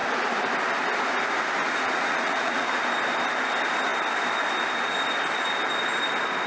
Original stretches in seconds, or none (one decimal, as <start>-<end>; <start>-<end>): 0.0-1.6; 2.8-6.5